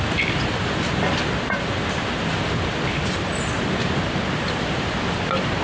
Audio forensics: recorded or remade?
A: recorded